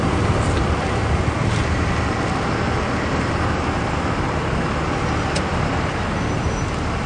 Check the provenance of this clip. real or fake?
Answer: real